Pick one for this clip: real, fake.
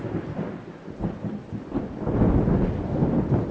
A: real